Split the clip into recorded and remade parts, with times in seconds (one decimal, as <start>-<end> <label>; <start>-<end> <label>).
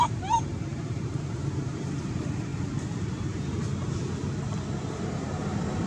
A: 0.0-2.5 remade; 2.5-3.0 recorded; 3.0-3.7 remade; 3.7-4.9 recorded; 4.9-5.9 remade